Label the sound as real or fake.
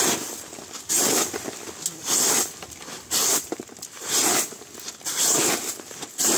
real